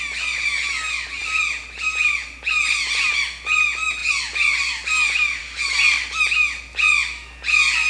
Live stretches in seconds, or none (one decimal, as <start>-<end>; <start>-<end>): 0.0-1.2; 3.1-4.0; 4.6-7.9